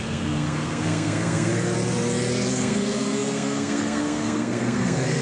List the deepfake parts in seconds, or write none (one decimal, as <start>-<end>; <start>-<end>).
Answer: 0.0-1.5; 2.5-5.2